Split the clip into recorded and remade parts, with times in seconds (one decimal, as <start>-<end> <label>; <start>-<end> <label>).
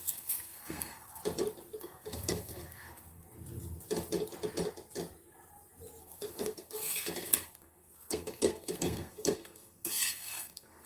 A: 0.0-1.2 remade; 1.2-1.8 recorded; 1.8-3.2 remade; 3.2-6.0 recorded; 6.0-10.9 remade